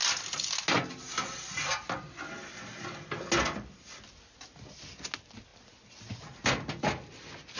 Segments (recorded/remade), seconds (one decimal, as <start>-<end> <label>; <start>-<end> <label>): 0.0-7.6 recorded